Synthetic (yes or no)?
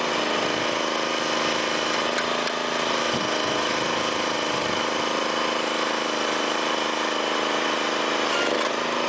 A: no